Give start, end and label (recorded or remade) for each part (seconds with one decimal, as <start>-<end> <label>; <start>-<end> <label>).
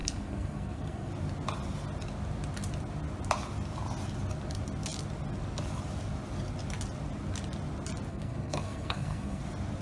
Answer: 0.0-1.1 remade; 1.1-8.1 recorded; 8.1-9.4 remade; 9.4-9.8 recorded